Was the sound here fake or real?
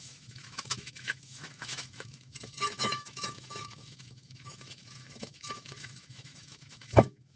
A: fake